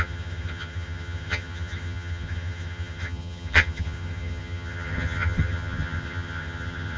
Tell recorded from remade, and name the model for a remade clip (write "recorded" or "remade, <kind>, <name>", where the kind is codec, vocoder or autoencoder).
remade, vocoder, HiFi-GAN